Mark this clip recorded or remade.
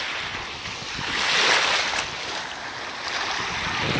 recorded